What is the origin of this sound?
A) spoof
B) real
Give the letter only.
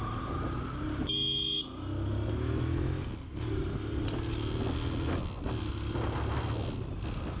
B